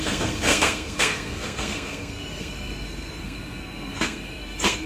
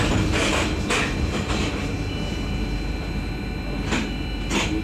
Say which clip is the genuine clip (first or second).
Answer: second